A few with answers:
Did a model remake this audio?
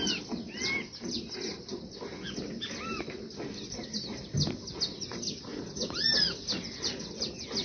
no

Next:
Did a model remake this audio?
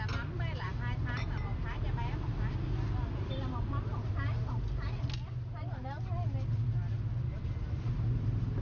no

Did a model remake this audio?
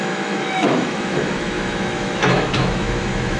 yes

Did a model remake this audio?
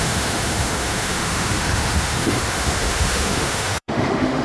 yes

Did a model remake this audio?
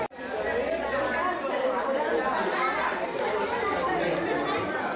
no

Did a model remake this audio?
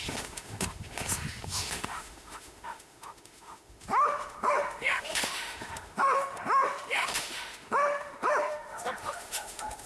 yes